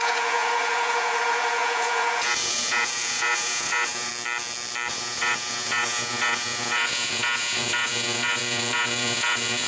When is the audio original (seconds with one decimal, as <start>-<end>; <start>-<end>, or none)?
4.1-4.9